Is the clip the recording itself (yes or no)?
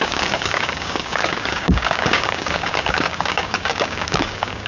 no